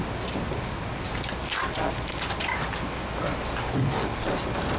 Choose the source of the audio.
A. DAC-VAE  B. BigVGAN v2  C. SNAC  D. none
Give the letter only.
D